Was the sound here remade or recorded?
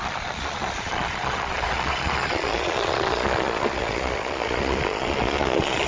remade